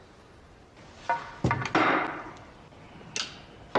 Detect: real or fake real